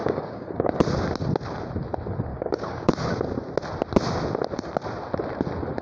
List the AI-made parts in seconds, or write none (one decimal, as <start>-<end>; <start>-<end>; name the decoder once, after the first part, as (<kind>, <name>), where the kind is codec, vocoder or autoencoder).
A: 0.0-0.8 (codec, DAC); 2.3-2.9